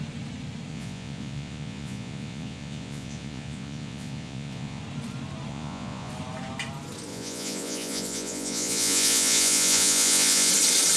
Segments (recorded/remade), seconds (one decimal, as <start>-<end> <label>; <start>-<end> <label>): 0.0-0.7 recorded; 0.7-4.8 remade; 4.8-5.5 recorded; 5.5-6.1 remade; 6.1-7.1 recorded; 7.1-10.5 remade; 10.5-11.0 recorded